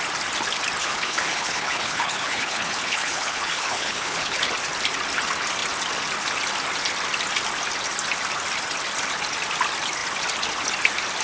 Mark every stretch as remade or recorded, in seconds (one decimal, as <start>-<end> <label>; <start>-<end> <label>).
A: 0.0-0.8 recorded; 0.8-4.5 remade; 4.5-11.2 recorded